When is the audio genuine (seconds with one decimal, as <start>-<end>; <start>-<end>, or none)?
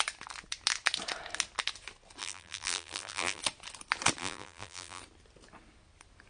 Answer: 0.0-2.2; 3.4-4.2; 5.0-6.3